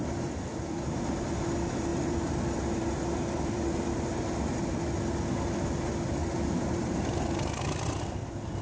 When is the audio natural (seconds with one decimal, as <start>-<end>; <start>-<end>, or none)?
0.0-1.9; 4.8-6.2; 7.5-8.6